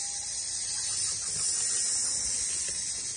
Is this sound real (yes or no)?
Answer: yes